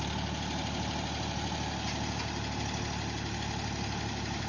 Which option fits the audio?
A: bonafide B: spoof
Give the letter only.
A